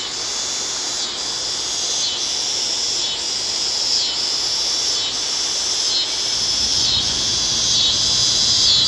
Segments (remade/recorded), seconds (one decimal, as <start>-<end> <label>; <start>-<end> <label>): 0.0-6.7 recorded; 6.7-7.2 remade; 7.2-8.9 recorded